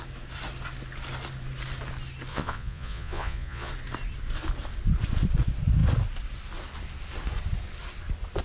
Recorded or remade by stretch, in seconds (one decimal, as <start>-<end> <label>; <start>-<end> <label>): 0.0-2.3 recorded; 2.3-3.7 remade; 3.7-8.4 recorded